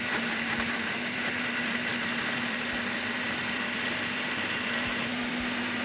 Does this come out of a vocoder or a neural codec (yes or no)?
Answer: yes